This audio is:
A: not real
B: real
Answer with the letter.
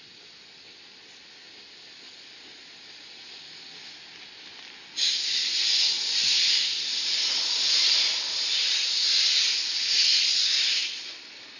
B